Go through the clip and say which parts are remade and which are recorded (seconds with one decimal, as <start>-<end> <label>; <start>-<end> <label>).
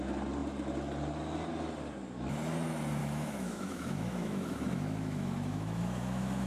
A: 0.0-3.0 recorded; 3.0-6.5 remade